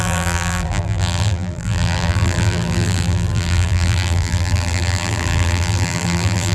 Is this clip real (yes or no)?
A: no